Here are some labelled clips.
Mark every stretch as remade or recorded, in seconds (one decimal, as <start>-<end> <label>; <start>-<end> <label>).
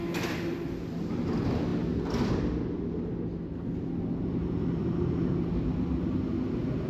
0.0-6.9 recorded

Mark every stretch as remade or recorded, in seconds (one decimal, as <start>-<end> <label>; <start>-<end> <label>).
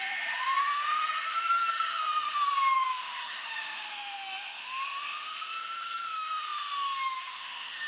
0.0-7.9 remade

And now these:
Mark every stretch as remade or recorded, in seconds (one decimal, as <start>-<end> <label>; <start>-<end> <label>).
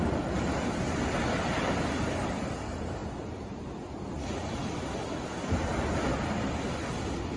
0.0-7.4 recorded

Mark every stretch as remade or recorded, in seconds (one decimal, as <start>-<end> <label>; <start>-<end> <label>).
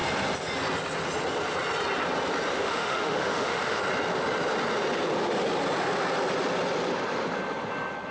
0.0-2.5 recorded; 2.5-3.8 remade; 3.8-8.1 recorded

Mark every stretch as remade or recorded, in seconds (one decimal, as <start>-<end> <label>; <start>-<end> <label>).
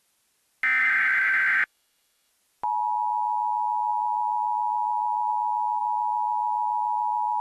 0.0-0.8 recorded; 0.8-2.3 remade; 2.3-7.4 recorded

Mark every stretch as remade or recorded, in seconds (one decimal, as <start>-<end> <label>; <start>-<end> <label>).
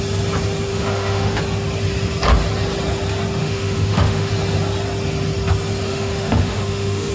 0.0-0.7 recorded; 0.7-1.4 remade; 1.4-3.4 recorded; 3.4-4.3 remade; 4.3-5.9 recorded; 5.9-7.1 remade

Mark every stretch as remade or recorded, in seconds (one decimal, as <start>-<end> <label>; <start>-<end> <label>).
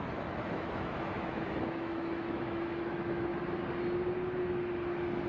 0.0-3.3 remade; 3.3-5.3 recorded